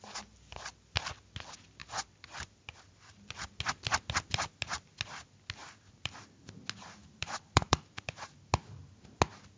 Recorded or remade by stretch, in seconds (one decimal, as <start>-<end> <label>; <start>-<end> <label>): 0.0-1.8 recorded; 1.8-3.5 remade; 3.5-5.6 recorded; 5.6-6.6 remade; 6.6-7.0 recorded; 7.0-8.2 remade; 8.2-9.6 recorded